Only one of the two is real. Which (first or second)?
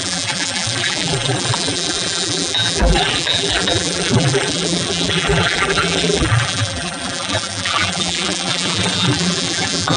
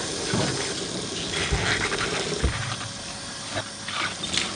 second